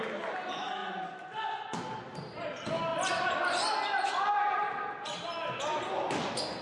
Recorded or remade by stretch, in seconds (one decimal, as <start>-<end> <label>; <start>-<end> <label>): 0.0-2.9 recorded; 2.9-4.1 remade; 4.1-4.6 recorded; 4.6-5.2 remade; 5.2-6.6 recorded